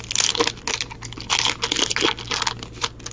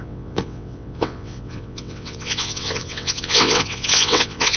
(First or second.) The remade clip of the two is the second